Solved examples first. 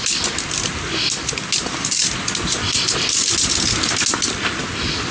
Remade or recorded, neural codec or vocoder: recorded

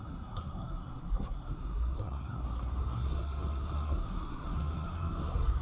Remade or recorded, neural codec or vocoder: remade, codec, SNAC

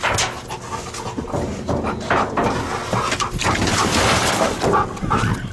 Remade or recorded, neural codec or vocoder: recorded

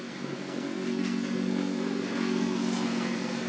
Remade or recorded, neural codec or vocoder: remade, codec, SNAC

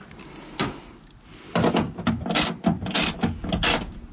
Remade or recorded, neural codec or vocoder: recorded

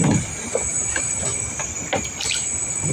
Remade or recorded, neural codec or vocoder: recorded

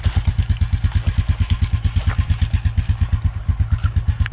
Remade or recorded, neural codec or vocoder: recorded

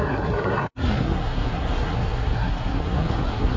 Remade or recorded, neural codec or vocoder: remade, codec, SNAC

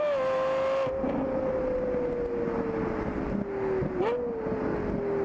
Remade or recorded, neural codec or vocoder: recorded